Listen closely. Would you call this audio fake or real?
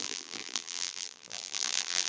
fake